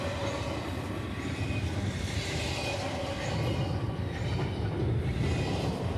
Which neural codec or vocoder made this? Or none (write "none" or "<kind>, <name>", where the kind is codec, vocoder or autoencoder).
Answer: none